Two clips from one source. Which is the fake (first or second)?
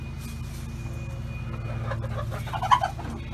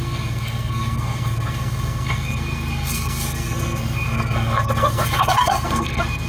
second